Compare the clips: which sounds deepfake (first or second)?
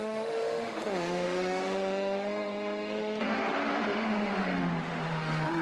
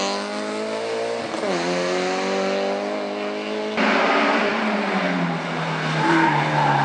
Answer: first